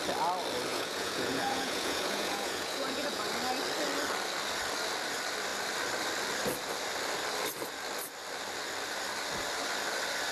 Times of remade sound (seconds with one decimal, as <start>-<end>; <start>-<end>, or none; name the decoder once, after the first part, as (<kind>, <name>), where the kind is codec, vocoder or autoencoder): 0.7-3.3 (vocoder, Vocos)

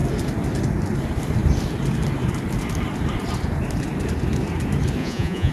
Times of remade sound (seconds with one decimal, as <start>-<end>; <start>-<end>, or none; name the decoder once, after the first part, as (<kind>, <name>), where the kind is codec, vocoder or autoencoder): 5.0-5.5 (vocoder, Vocos)

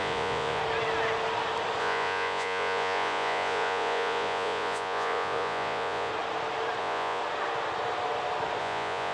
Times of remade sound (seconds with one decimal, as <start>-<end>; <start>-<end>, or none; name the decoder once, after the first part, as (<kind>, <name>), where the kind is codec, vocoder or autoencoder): 0.0-0.6 (vocoder, Vocos); 1.8-6.1; 6.8-7.2; 8.6-9.1

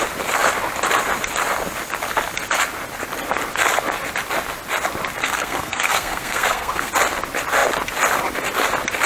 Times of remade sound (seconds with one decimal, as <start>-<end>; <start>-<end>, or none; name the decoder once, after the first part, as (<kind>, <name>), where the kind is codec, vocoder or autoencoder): 5.2-6.9 (codec, SNAC)

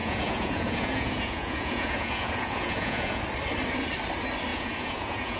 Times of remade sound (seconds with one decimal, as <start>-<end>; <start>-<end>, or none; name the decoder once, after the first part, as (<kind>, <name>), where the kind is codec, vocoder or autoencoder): 0.0-3.2 (vocoder, Vocos); 4.5-5.4